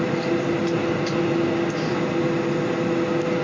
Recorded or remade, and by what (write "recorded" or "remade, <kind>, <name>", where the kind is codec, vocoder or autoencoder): recorded